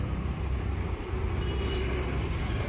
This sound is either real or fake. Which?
real